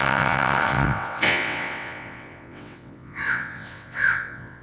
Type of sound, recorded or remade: remade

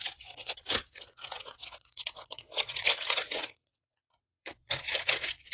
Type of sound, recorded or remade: remade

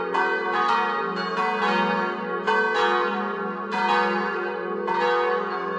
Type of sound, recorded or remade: recorded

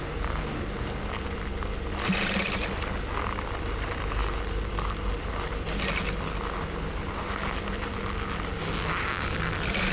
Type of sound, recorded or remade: recorded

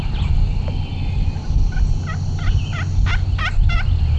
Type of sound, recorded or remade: recorded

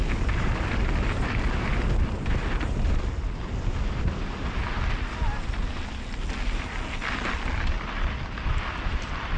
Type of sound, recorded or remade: recorded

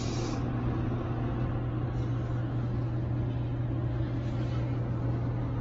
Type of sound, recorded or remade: recorded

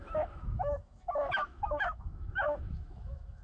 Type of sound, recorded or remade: remade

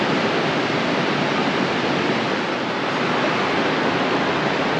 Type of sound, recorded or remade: recorded